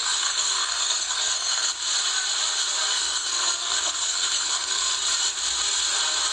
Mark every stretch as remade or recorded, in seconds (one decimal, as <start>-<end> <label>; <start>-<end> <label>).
0.0-1.7 remade; 1.7-2.9 recorded; 2.9-4.9 remade; 4.9-6.3 recorded